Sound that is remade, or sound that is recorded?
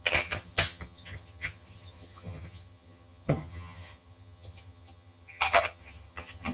remade